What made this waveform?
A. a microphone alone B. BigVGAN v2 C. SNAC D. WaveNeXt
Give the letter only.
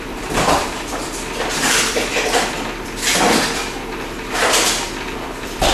B